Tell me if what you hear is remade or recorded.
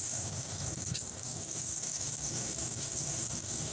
remade